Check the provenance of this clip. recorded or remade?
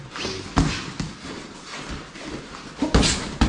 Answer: recorded